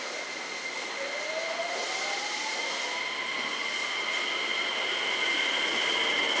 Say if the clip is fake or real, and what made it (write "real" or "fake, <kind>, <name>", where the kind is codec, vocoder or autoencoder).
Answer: real